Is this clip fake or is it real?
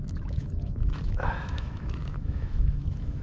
fake